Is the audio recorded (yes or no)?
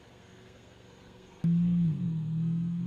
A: no